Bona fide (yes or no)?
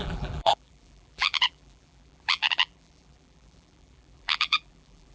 no